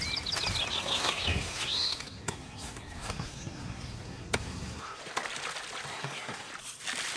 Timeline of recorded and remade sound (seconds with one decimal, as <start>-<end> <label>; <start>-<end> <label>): 0.0-0.7 recorded; 0.7-5.0 remade; 5.0-5.9 recorded; 5.9-6.5 remade; 6.5-7.2 recorded